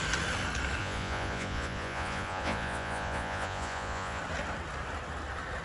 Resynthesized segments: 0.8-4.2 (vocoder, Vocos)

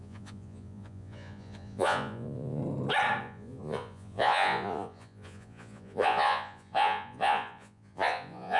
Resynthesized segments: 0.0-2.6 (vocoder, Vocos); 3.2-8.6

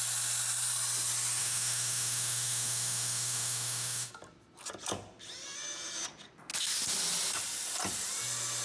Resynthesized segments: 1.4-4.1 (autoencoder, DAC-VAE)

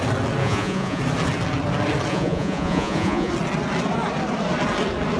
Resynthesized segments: 0.4-1.0 (vocoder, Vocos); 2.1-3.3

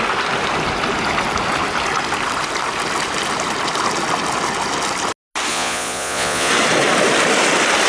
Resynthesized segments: 5.5-6.5 (vocoder, Vocos)

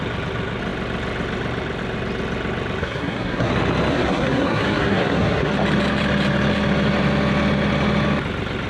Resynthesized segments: 2.8-3.5 (codec, SNAC); 3.9-5.5